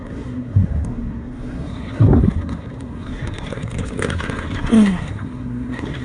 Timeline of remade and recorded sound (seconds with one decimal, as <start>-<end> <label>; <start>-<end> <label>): 0.0-6.0 remade